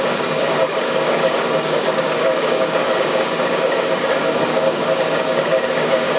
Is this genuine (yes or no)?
no